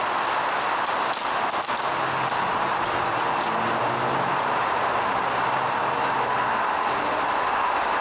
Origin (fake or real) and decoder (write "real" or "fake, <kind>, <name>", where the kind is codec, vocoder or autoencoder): real